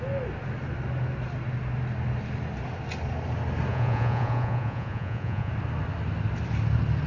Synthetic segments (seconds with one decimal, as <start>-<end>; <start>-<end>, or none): 3.7-5.5